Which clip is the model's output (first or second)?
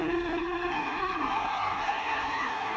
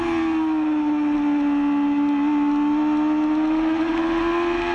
first